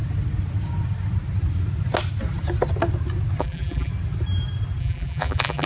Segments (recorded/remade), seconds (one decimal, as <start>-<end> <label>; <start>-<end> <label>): 0.0-3.4 recorded; 3.4-3.9 remade; 3.9-4.8 recorded; 4.8-5.7 remade